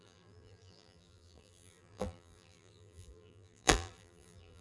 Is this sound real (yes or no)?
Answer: no